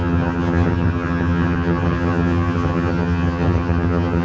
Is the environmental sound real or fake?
fake